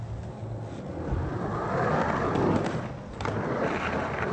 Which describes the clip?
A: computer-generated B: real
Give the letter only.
B